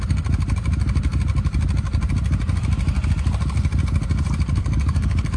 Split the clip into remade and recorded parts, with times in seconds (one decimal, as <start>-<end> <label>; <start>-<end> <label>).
0.0-4.6 recorded; 4.6-5.4 remade